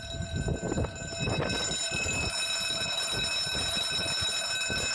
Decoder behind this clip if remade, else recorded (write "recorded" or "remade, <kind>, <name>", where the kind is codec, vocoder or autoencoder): recorded